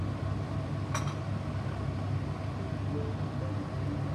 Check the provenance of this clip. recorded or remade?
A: recorded